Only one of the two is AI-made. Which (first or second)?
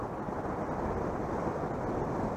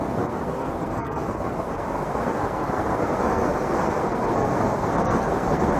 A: second